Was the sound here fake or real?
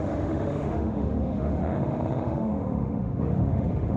fake